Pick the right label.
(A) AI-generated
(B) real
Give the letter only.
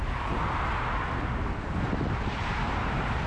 B